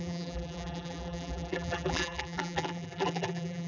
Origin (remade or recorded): remade